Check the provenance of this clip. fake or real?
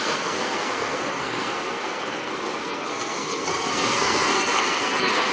fake